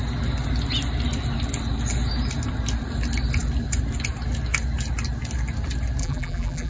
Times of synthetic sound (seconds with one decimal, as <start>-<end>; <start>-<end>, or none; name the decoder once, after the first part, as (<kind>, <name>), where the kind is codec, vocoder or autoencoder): 6.0-6.7 (vocoder, BigVGAN v2)